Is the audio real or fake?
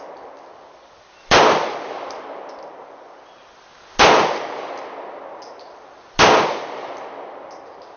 real